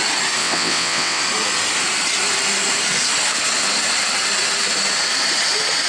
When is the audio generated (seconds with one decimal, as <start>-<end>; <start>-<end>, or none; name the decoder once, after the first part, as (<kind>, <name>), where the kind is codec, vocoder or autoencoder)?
0.4-1.2 (vocoder, WaveNeXt)

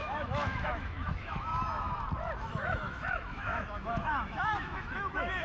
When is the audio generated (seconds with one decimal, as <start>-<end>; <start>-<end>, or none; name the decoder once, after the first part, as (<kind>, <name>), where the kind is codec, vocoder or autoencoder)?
0.0-1.5 (autoencoder, DAC-VAE); 2.4-5.4

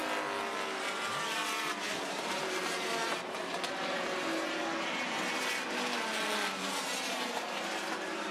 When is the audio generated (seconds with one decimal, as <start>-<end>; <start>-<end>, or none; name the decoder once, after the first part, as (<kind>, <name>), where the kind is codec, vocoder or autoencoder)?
1.6-8.3 (vocoder, BigVGAN v2)

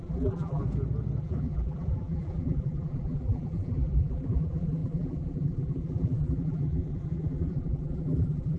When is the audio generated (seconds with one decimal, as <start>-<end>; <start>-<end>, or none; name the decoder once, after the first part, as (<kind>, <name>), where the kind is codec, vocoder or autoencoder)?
0.0-0.6 (vocoder, BigVGAN v2); 1.2-8.6

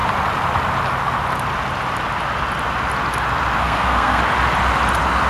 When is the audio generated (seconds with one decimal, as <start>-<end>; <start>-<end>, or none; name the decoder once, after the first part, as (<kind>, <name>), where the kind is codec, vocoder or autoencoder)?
3.6-4.2 (codec, SNAC)

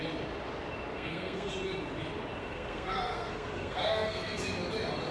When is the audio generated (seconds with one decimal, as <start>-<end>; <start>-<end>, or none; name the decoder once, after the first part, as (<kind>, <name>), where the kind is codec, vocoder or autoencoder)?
0.9-1.5 (codec, SNAC); 2.4-4.4

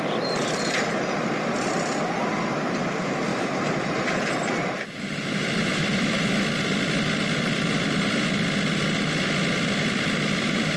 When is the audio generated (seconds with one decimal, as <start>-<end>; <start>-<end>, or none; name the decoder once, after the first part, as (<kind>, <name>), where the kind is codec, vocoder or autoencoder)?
3.3-6.3 (vocoder, BigVGAN v2)

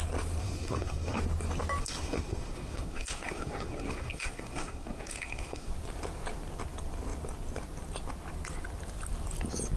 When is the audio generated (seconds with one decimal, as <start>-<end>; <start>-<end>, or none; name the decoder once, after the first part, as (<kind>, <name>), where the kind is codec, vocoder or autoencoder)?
0.4-1.2 (codec, SNAC); 1.8-5.7